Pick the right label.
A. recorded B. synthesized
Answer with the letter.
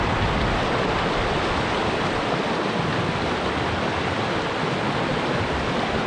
A